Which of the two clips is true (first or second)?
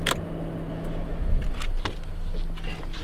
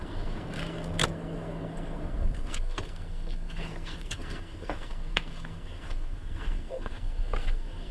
first